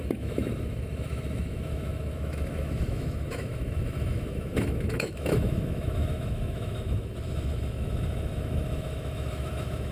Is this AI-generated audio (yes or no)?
yes